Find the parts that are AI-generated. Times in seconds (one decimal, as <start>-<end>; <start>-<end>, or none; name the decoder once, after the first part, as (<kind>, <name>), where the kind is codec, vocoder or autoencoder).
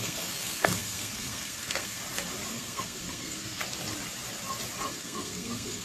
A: 0.0-2.0 (codec, SNAC); 2.5-3.6; 4.9-5.8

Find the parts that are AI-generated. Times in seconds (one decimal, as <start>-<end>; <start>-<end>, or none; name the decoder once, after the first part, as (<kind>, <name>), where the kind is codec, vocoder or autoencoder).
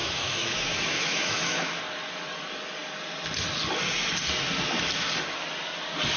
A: 0.0-1.8 (autoencoder, DAC-VAE)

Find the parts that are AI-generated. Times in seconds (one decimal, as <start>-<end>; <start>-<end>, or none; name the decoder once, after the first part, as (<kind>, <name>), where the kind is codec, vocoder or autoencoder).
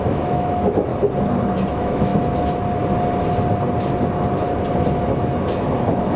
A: 0.0-0.9 (autoencoder, DAC-VAE); 1.7-2.1; 5.8-6.2